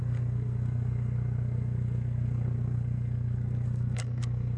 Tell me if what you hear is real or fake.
fake